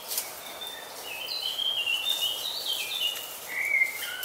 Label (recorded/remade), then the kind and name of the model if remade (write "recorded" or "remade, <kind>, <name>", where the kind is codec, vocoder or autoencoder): recorded